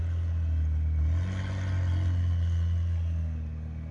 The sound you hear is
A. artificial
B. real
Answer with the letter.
B